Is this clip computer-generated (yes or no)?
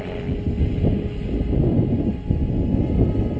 no